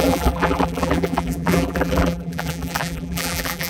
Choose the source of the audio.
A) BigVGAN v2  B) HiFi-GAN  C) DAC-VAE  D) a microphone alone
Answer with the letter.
A